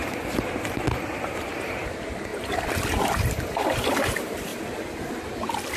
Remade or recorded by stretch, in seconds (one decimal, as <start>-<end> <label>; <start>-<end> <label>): 0.0-4.5 remade; 4.5-5.1 recorded; 5.1-5.8 remade